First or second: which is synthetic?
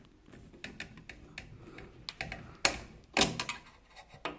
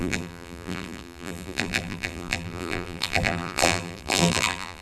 second